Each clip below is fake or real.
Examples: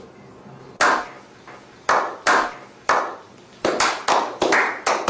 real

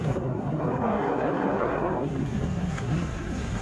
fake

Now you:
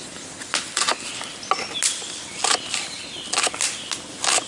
real